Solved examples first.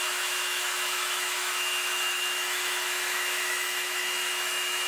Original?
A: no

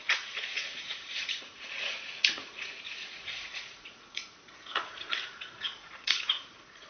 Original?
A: no